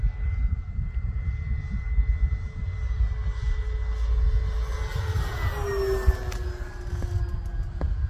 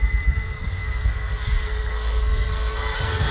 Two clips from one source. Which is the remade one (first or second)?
second